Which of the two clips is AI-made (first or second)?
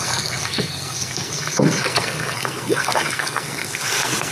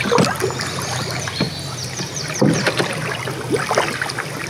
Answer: first